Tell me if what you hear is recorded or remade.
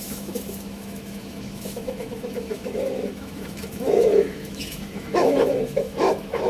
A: remade